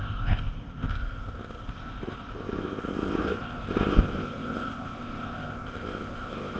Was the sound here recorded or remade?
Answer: remade